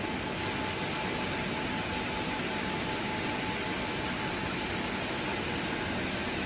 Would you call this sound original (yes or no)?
yes